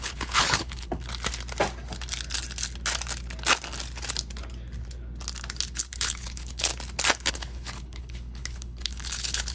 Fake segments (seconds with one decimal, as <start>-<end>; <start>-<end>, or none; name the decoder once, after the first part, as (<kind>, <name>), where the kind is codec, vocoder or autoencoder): 0.0-0.9 (codec, HILCodec); 5.9-6.7; 7.3-9.5